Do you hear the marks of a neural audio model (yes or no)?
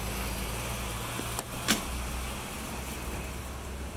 no